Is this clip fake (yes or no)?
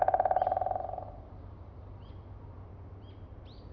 no